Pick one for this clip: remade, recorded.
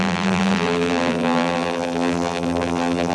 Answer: remade